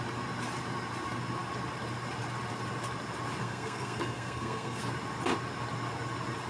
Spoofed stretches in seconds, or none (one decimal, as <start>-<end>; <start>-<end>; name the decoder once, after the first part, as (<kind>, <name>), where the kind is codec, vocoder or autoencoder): 3.4-4.8 (codec, SNAC)